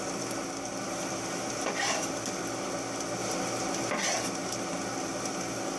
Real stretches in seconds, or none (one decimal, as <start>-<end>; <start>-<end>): 0.0-5.8